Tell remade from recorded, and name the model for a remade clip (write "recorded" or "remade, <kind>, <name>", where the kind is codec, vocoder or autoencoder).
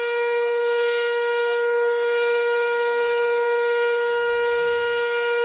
remade, codec, SNAC